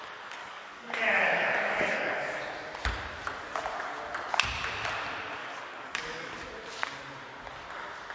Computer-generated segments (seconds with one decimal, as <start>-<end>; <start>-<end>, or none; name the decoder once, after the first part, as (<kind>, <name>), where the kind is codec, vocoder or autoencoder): 0.4-2.5 (codec, DAC); 5.4-6.3